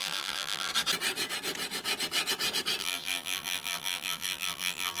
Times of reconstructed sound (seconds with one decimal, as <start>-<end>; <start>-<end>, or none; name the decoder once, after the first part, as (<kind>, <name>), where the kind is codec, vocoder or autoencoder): 0.0-0.7 (vocoder, BigVGAN v2); 2.8-5.0